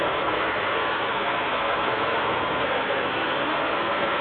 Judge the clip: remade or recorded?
remade